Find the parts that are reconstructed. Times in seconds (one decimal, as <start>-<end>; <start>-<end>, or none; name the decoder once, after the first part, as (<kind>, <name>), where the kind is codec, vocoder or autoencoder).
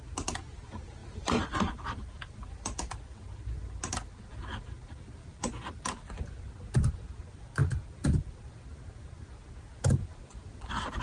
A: 1.0-3.6 (vocoder, BigVGAN v2); 5.2-5.8; 7.6-8.8; 10.1-11.0